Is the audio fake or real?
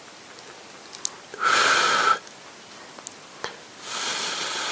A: real